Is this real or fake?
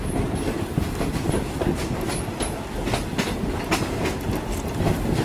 real